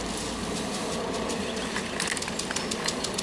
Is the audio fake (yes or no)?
no